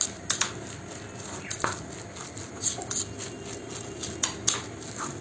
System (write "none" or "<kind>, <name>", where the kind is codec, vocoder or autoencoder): none